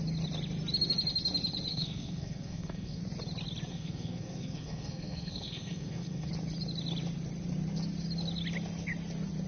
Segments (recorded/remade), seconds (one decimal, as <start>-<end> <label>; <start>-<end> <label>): 0.0-1.7 recorded; 1.7-3.0 remade; 3.0-3.7 recorded; 3.7-6.3 remade; 6.3-9.5 recorded